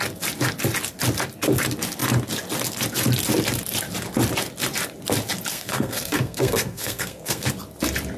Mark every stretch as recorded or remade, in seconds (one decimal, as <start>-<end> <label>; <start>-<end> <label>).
0.0-5.5 recorded; 5.5-7.5 remade; 7.5-8.2 recorded